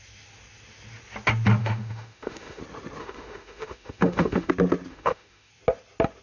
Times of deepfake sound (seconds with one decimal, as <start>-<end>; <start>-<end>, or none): 1.6-2.6; 3.0-4.5; 4.9-5.5